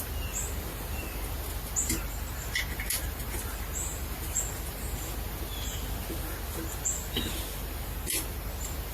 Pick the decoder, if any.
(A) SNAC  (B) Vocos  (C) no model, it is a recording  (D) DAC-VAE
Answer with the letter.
C